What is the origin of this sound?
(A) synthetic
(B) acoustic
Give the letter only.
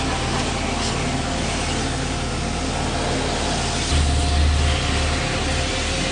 B